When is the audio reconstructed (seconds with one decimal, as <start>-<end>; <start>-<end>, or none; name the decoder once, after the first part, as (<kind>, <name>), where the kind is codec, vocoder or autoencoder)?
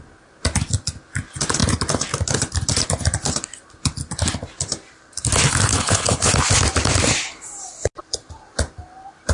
5.7-6.3 (codec, HILCodec)